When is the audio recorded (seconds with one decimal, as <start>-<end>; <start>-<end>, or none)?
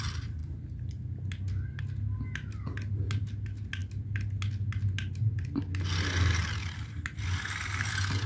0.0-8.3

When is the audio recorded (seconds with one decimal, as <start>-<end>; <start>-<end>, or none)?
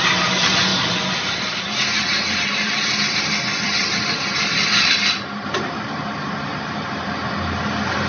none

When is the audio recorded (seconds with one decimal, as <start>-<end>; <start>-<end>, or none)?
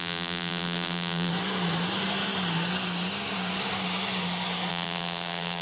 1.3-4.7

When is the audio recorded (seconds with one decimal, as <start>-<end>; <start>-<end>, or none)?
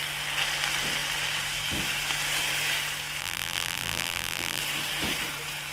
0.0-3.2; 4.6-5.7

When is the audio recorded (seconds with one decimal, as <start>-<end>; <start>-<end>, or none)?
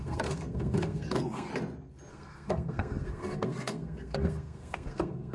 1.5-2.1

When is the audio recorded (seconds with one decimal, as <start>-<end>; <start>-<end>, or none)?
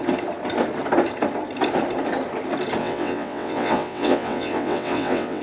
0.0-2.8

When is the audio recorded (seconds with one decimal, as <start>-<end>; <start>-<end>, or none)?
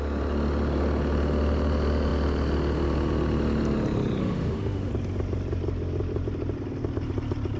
0.0-4.2; 4.9-7.6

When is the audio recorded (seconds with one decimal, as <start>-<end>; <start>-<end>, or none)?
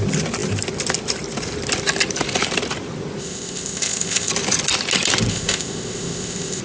0.0-3.2; 4.3-5.3